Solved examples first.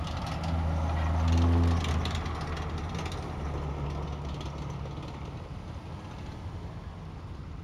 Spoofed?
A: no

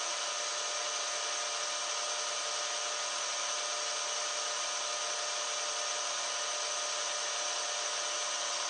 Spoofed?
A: no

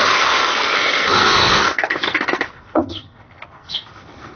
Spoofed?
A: yes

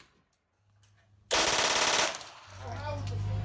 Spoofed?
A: no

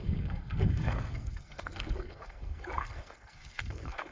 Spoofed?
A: yes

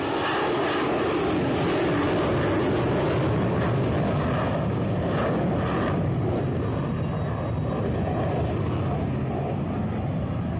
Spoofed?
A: no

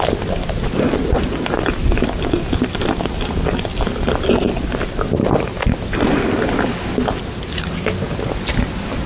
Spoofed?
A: no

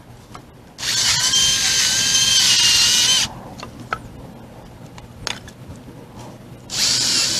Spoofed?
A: no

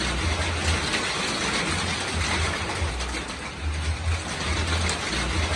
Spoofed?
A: no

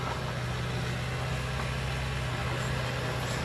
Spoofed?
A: no